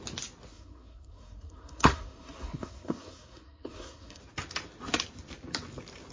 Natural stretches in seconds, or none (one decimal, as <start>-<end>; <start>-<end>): 0.0-0.5; 4.2-6.1